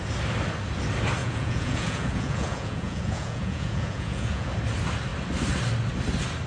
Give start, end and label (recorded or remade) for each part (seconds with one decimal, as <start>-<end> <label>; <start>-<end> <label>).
0.0-1.2 recorded; 1.2-4.5 remade; 4.5-6.5 recorded